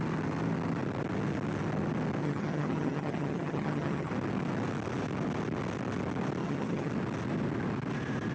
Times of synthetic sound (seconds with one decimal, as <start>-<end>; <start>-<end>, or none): 2.2-4.1; 6.4-6.9